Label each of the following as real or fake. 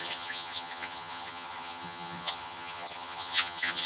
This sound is fake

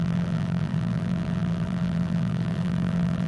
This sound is fake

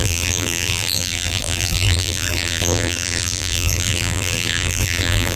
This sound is fake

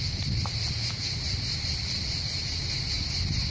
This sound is real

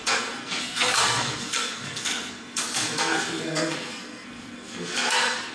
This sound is fake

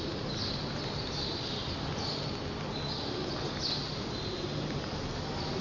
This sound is real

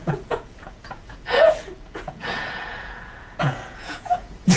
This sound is fake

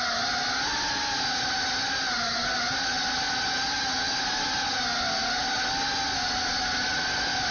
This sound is real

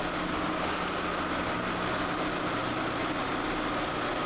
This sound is real